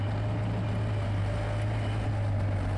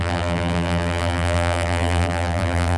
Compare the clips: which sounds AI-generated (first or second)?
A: second